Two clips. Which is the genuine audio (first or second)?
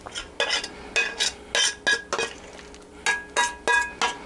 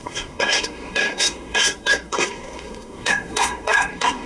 first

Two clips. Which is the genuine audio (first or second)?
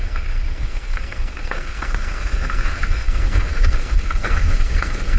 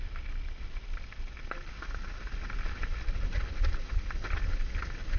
second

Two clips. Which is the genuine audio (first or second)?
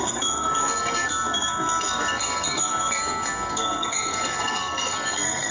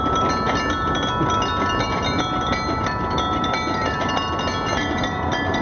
second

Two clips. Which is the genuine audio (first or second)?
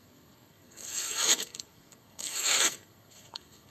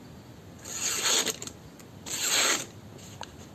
second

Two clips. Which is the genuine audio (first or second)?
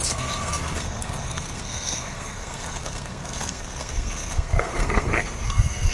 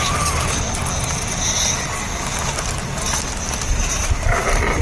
second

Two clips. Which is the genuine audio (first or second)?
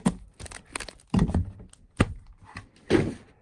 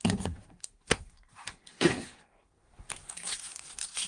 first